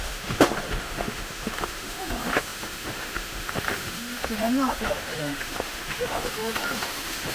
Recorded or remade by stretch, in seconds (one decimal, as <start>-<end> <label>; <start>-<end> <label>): 0.0-7.3 remade